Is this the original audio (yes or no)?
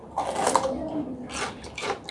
yes